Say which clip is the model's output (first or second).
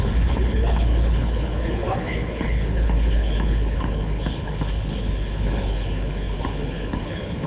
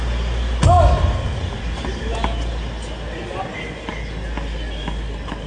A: first